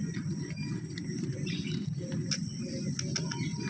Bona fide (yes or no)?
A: yes